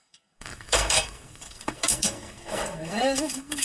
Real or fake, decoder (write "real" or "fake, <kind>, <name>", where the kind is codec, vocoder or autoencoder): fake, codec, SNAC